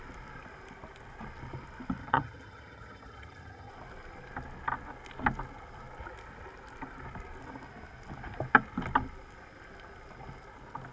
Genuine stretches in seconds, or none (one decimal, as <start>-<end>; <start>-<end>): 0.0-2.0; 3.7-10.9